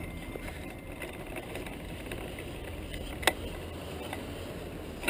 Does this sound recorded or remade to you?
recorded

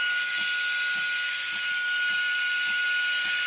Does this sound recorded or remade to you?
recorded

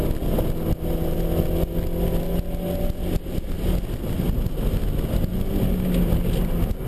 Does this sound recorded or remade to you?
recorded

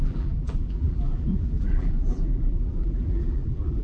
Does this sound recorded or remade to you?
remade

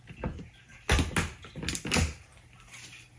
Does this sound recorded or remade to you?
recorded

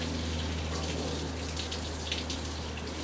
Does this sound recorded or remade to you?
recorded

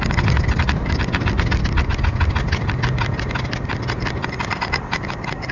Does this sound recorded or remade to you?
recorded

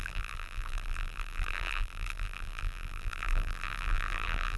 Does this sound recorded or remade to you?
remade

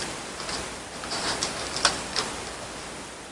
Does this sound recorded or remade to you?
remade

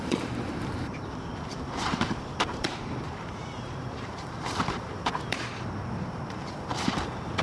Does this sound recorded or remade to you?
remade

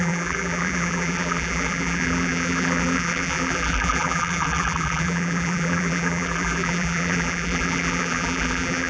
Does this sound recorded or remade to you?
remade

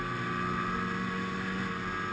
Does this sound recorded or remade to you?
recorded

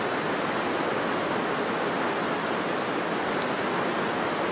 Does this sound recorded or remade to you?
recorded